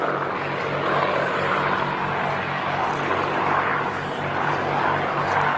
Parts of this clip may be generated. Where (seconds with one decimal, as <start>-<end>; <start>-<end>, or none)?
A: none